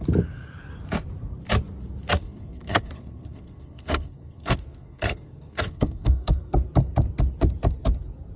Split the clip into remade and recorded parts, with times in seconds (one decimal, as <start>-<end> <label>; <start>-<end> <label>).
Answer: 0.0-2.2 recorded; 2.2-6.6 remade; 6.6-8.4 recorded

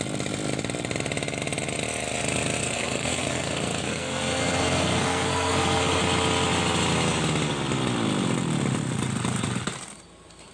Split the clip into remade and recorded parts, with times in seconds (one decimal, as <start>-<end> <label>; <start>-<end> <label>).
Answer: 0.0-2.6 recorded; 2.6-6.0 remade; 6.0-10.5 recorded

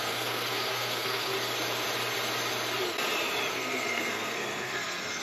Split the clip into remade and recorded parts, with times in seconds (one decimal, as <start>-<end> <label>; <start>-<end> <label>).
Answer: 0.0-1.3 remade; 1.3-3.5 recorded; 3.5-5.2 remade

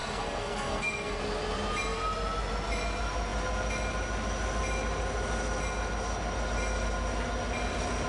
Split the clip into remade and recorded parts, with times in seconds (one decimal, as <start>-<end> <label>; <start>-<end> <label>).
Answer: 0.0-1.2 remade; 1.2-8.1 recorded

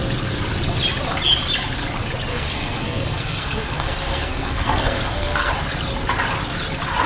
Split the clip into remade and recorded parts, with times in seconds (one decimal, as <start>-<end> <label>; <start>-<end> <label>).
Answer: 0.0-2.3 recorded; 2.3-5.5 remade; 5.5-7.1 recorded

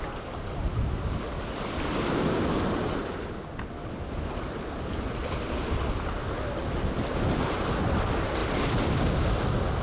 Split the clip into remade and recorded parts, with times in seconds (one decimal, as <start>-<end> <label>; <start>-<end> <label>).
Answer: 0.0-9.8 recorded